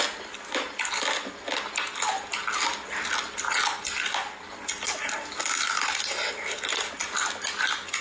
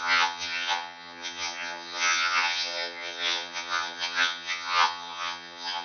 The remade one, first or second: second